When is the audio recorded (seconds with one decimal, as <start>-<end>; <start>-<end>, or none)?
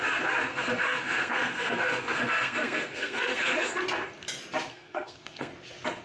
0.0-0.5; 3.8-4.7; 5.5-6.0